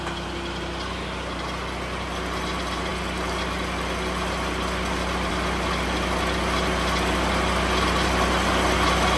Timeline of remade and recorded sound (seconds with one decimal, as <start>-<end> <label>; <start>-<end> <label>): 0.0-9.2 recorded